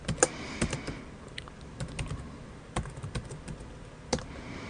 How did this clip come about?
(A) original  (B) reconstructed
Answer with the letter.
A